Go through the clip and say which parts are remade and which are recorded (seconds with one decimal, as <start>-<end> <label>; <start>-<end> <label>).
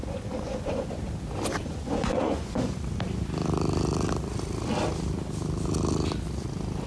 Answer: 0.0-0.9 remade; 0.9-1.6 recorded; 1.6-2.8 remade; 2.8-6.9 recorded